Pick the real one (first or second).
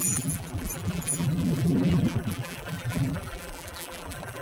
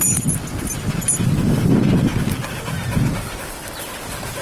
second